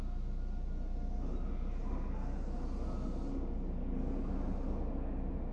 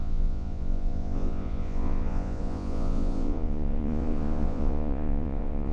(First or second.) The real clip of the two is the first